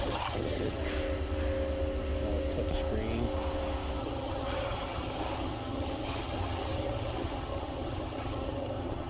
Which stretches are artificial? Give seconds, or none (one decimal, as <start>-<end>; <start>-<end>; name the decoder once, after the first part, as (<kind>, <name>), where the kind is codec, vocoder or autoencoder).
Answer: 0.0-0.8 (vocoder, HiFi-GAN); 4.0-9.1